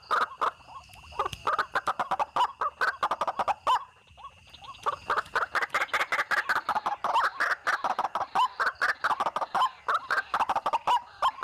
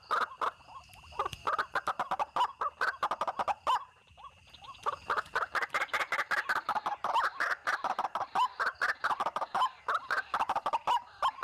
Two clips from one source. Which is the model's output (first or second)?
second